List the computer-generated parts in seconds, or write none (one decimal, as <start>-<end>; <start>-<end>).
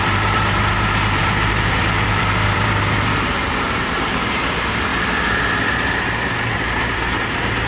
0.0-4.9; 5.4-7.7